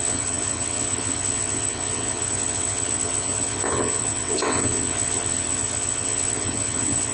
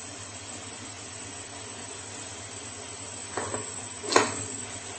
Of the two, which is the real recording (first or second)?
second